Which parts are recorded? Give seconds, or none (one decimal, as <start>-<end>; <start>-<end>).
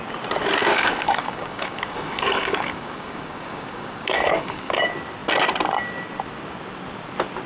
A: 0.0-0.7; 4.7-7.5